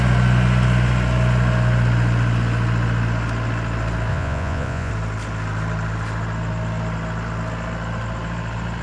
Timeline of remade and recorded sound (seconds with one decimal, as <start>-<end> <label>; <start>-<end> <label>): 0.0-4.1 recorded; 4.1-4.9 remade; 4.9-8.8 recorded